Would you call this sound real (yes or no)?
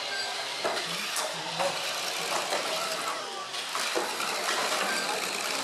yes